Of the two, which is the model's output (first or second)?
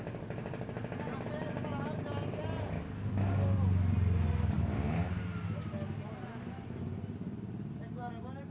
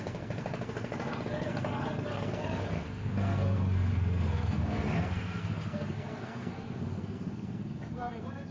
second